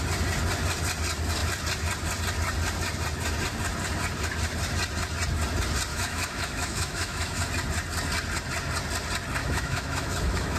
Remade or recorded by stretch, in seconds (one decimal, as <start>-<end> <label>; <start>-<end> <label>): 0.0-5.9 recorded; 5.9-7.5 remade; 7.5-9.4 recorded; 9.4-10.6 remade